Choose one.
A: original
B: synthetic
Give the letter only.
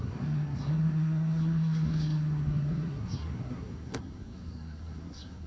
B